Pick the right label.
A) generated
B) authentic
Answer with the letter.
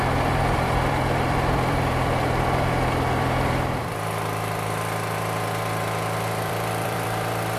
A